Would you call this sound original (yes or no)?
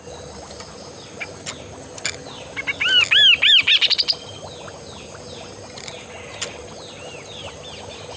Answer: yes